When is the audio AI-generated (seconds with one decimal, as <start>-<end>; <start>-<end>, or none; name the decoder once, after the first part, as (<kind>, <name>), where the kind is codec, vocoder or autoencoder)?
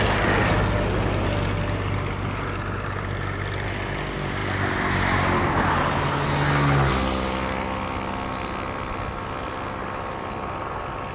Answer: none